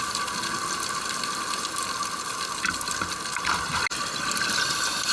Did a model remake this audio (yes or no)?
no